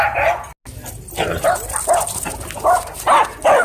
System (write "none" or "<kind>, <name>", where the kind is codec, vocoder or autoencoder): none